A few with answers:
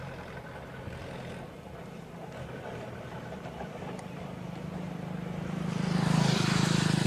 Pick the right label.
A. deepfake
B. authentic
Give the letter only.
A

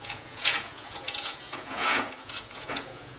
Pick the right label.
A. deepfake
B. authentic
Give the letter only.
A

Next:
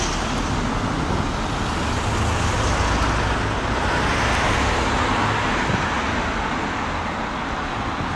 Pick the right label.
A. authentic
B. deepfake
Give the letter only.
A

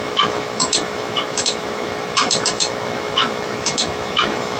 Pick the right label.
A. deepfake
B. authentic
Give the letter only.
A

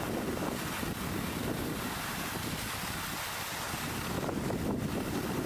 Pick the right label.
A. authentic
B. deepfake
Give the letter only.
A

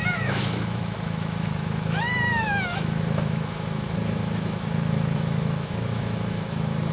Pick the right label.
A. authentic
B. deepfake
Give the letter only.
B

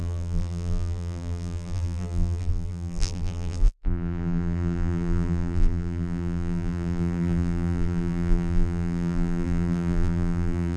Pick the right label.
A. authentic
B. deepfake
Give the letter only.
B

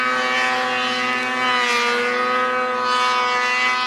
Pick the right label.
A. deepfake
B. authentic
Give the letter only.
B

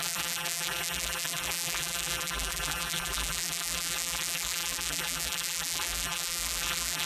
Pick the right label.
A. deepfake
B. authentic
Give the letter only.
A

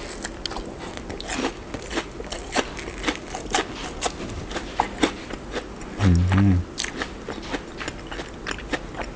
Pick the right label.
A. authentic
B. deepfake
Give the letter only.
A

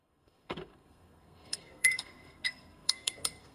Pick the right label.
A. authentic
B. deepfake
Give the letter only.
B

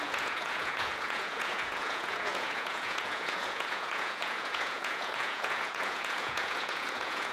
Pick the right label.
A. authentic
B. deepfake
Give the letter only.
B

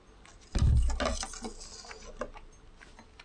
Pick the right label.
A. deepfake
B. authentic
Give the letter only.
B